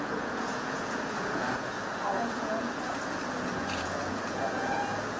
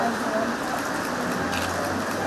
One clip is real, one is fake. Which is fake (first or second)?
first